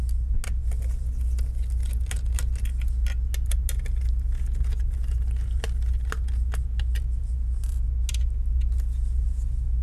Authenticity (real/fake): real